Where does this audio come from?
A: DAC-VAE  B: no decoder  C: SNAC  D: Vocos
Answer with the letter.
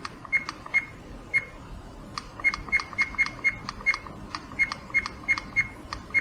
B